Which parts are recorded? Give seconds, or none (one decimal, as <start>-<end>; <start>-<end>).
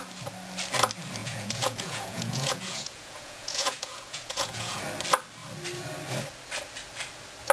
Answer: 0.0-1.2; 4.8-7.5